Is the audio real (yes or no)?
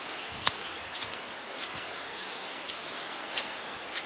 no